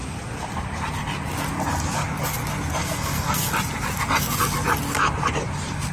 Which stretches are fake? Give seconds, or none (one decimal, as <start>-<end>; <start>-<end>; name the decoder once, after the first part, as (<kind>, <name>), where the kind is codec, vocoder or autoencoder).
2.8-3.5 (codec, SNAC)